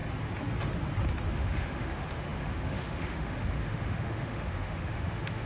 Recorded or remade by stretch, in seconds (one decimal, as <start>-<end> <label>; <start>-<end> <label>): 0.0-1.3 recorded; 1.3-5.5 remade